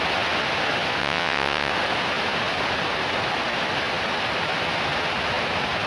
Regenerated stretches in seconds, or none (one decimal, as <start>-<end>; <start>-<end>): 1.0-1.7